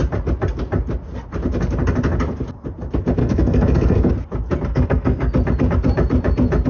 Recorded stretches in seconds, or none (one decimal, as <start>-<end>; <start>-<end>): 0.0-3.2; 4.1-4.7; 5.3-6.7